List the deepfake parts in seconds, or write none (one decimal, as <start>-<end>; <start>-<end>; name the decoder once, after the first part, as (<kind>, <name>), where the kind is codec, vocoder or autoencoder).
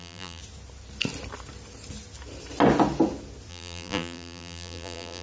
0.0-0.4 (vocoder, BigVGAN v2); 3.5-5.2